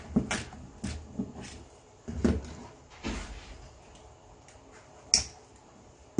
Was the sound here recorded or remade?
recorded